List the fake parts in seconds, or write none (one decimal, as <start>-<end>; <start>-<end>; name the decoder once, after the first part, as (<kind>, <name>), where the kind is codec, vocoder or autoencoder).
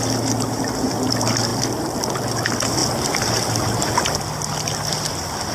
none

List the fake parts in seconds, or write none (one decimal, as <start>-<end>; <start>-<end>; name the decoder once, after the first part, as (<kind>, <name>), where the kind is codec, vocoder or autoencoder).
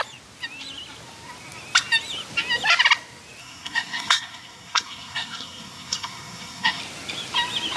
3.4-6.8 (codec, SNAC)